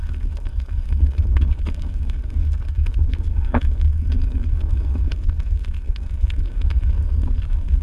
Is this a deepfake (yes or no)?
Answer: yes